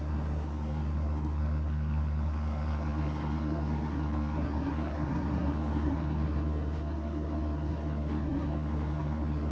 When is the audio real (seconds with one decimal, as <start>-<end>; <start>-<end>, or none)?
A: none